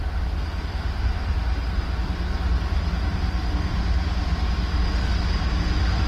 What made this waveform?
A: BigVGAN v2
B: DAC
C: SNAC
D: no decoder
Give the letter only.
D